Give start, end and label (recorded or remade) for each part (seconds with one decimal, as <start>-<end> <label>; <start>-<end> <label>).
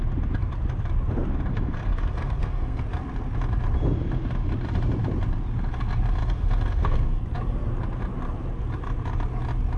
0.0-1.5 recorded; 1.5-2.8 remade; 2.8-6.2 recorded; 6.2-7.2 remade; 7.2-9.8 recorded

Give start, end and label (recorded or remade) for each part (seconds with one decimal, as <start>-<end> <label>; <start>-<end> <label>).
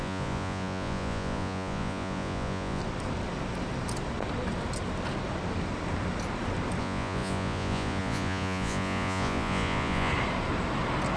0.0-2.8 remade; 2.8-6.8 recorded; 6.8-10.1 remade; 10.1-11.2 recorded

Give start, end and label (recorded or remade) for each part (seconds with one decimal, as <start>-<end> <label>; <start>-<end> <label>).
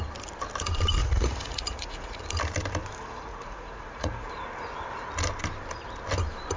0.0-1.0 recorded; 1.0-2.2 remade; 2.2-3.3 recorded; 3.3-4.3 remade; 4.3-6.6 recorded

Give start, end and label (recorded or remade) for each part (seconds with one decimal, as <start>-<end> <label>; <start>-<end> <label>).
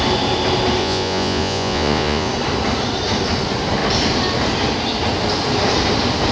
0.0-0.8 recorded; 0.8-2.3 remade; 2.3-6.3 recorded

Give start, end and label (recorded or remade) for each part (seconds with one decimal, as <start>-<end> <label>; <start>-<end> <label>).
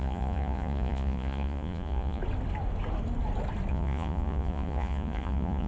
0.0-2.2 remade; 2.2-3.7 recorded; 3.7-5.7 remade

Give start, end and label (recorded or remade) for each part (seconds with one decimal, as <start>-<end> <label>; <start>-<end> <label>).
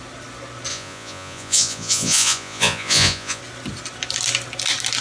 0.0-0.7 recorded; 0.7-3.4 remade; 3.4-5.0 recorded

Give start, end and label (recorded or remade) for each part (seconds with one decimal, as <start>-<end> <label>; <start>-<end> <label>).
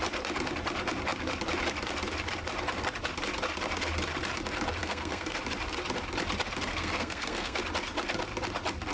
0.0-4.8 recorded; 4.8-5.4 remade; 5.4-6.7 recorded; 6.7-7.6 remade; 7.6-8.9 recorded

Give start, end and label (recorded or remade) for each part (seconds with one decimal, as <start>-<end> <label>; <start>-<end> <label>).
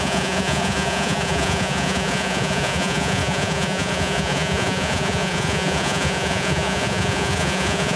0.0-8.0 remade